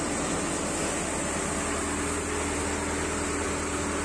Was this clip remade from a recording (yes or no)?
no